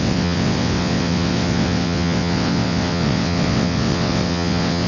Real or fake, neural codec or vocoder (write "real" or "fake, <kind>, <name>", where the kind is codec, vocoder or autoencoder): fake, vocoder, WaveNeXt